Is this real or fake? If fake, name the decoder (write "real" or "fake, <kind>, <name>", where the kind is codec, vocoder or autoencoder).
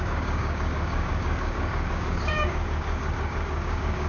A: fake, codec, DAC